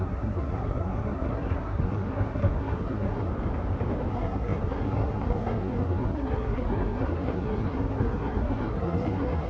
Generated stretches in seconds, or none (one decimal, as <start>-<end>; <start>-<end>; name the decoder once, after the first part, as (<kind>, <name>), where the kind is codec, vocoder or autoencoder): 0.0-3.3 (codec, SNAC); 4.1-9.5